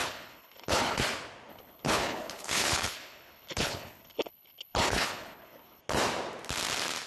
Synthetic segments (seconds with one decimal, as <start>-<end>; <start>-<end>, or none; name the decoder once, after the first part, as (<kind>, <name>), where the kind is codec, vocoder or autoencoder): 0.0-1.0 (codec, HILCodec); 1.5-5.8

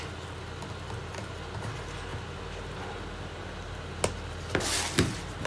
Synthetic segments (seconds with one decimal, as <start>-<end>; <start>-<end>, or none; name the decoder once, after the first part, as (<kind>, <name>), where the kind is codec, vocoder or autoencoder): none

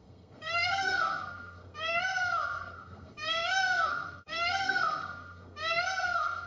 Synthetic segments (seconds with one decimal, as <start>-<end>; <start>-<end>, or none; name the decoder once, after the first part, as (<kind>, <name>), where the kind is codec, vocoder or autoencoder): 0.0-6.5 (codec, SNAC)

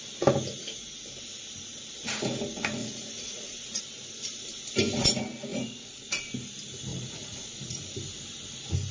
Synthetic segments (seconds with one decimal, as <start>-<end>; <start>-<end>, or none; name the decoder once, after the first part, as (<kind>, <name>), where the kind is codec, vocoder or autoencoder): 2.8-3.8 (vocoder, Vocos); 5.5-6.2; 6.9-7.8

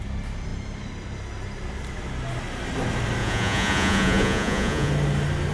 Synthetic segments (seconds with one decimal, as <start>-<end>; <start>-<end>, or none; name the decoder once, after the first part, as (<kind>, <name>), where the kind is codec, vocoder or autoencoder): 3.2-4.9 (vocoder, Vocos)

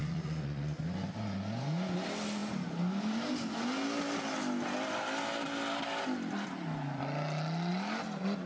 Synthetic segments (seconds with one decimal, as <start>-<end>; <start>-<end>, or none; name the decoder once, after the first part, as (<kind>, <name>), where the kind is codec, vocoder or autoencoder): 0.0-0.8 (vocoder, Vocos)

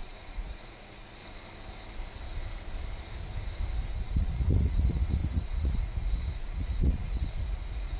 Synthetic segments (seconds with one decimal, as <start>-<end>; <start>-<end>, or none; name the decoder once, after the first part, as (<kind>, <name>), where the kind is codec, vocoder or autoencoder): 0.0-1.2 (vocoder, Vocos); 3.9-8.0